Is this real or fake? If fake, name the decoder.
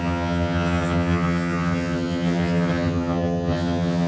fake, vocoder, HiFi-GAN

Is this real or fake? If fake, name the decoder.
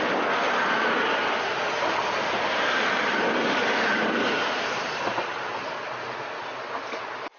real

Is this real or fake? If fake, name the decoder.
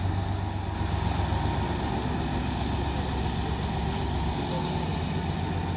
real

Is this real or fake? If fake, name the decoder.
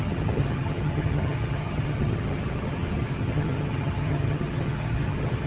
fake, vocoder, HiFi-GAN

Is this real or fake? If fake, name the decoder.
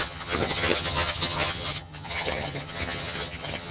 fake, vocoder, HiFi-GAN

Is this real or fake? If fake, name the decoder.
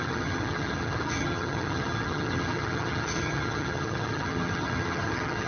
fake, vocoder, HiFi-GAN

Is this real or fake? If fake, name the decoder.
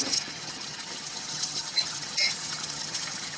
fake, vocoder, HiFi-GAN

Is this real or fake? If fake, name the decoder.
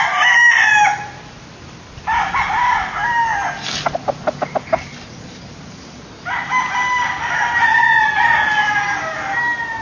real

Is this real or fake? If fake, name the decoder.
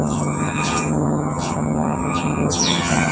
fake, vocoder, HiFi-GAN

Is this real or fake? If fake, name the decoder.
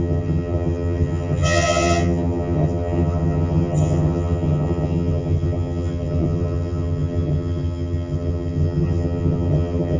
fake, vocoder, HiFi-GAN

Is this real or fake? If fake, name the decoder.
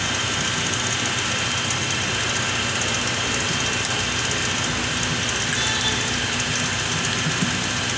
real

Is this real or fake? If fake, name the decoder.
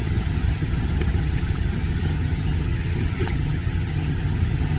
fake, vocoder, HiFi-GAN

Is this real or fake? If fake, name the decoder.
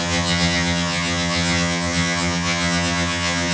fake, vocoder, HiFi-GAN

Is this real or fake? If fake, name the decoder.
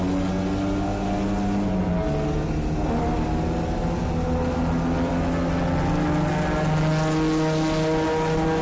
real